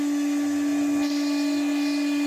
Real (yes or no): yes